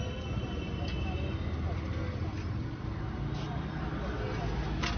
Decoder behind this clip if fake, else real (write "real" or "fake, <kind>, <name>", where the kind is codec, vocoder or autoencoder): real